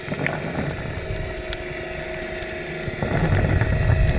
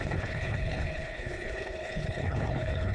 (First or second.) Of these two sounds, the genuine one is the first